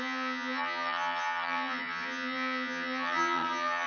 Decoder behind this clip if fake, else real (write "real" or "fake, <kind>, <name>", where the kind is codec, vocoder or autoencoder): fake, vocoder, HiFi-GAN